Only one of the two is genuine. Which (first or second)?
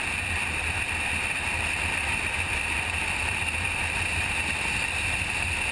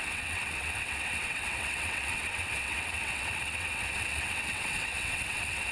first